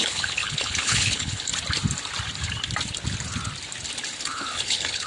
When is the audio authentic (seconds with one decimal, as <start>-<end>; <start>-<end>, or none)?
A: 1.5-4.2